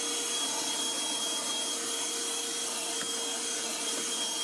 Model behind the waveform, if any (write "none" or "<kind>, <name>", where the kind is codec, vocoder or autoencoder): none